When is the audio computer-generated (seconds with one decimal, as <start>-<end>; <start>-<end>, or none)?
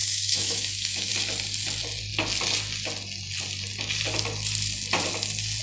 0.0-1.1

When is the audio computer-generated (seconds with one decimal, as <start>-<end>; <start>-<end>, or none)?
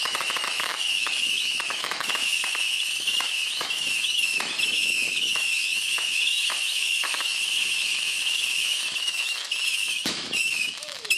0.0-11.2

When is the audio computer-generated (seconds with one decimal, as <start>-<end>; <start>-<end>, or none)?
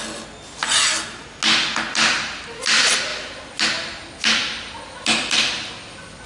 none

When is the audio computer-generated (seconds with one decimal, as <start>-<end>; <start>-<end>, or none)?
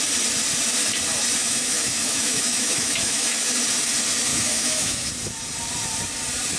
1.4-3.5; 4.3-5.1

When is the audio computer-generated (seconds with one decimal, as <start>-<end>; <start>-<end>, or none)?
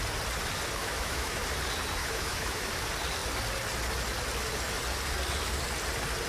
0.8-1.4; 2.0-2.7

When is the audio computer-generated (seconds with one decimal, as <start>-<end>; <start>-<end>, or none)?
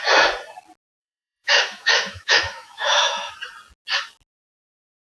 1.0-3.3